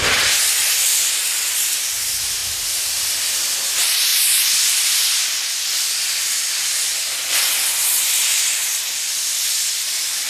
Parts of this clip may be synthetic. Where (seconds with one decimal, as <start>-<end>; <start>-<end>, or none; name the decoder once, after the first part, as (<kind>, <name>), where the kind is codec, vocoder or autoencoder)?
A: 0.6-1.2 (vocoder, BigVGAN v2); 2.4-3.3; 4.1-5.5; 8.6-9.1